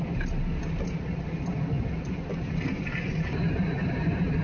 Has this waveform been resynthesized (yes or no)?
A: no